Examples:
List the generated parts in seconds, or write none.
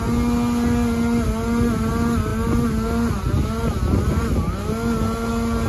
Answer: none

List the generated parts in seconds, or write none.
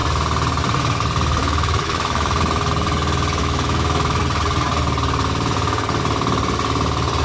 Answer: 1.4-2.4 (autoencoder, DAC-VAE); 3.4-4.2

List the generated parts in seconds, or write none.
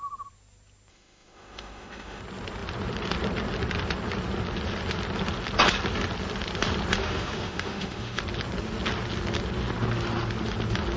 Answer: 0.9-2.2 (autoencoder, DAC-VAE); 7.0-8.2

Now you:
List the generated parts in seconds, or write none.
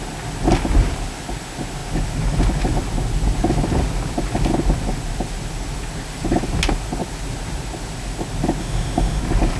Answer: 8.6-9.2 (autoencoder, DAC-VAE)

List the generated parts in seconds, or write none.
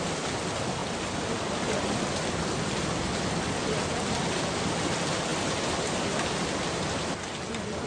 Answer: none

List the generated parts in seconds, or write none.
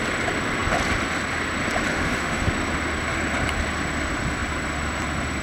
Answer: 1.9-2.5 (autoencoder, DAC-VAE)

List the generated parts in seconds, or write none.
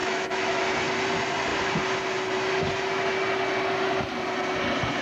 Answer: 0.0-0.6 (autoencoder, DAC-VAE)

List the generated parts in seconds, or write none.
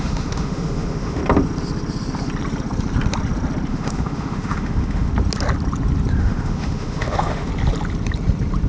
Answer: 0.0-1.2 (autoencoder, DAC-VAE); 3.7-5.1; 6.2-7.5